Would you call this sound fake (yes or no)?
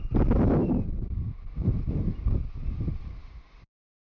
no